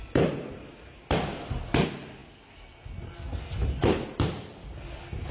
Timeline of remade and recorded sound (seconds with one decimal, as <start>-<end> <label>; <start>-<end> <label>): 0.0-5.3 recorded